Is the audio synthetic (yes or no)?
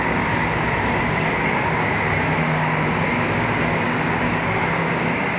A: yes